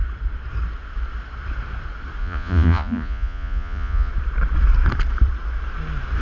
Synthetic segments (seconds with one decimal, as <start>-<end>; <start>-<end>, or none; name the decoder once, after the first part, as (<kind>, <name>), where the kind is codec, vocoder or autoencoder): 2.2-4.1 (vocoder, Vocos)

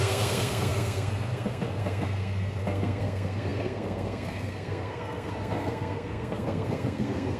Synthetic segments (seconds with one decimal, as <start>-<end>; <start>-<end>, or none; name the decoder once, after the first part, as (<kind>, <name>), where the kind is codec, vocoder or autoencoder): 0.0-7.4 (codec, SNAC)

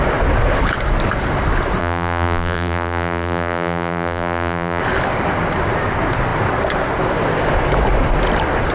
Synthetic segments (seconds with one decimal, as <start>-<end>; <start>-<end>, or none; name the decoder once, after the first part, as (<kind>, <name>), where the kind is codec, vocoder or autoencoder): 1.8-4.8 (vocoder, BigVGAN v2)

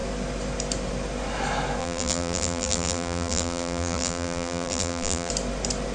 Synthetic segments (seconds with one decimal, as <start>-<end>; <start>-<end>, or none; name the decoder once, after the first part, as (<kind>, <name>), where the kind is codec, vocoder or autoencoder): 1.8-5.3 (vocoder, BigVGAN v2)